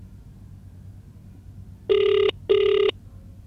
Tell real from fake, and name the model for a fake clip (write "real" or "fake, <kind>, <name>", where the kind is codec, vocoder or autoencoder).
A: real